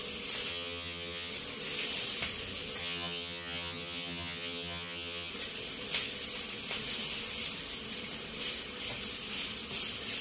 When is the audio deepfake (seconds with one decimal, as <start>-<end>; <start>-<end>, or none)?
0.5-1.3; 2.8-5.3